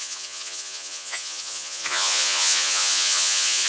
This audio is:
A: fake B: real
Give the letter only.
A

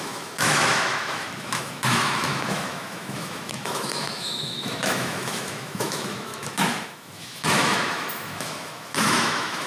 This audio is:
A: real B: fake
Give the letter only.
B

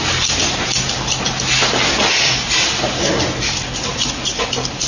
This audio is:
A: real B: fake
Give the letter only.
A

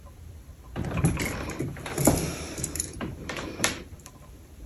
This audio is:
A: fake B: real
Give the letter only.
A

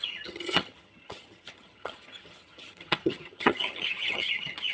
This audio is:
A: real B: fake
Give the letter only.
B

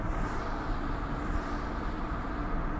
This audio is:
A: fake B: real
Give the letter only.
B